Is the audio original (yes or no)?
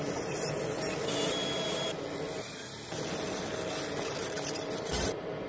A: yes